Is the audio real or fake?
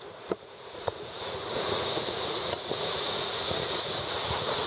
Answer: fake